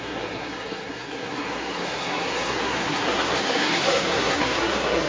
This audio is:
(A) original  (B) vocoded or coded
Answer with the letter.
B